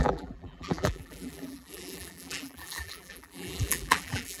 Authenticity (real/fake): fake